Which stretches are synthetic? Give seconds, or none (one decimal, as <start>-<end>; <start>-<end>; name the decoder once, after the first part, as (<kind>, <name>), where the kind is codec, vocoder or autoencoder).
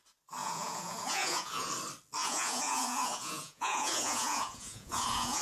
0.4-1.7 (vocoder, Vocos); 2.2-5.4